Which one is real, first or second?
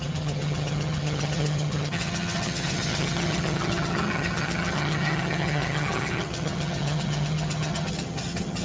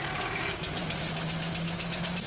second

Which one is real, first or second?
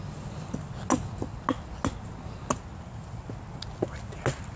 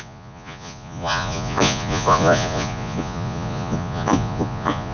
first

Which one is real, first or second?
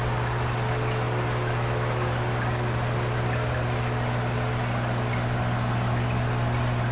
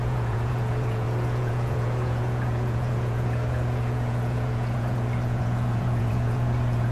first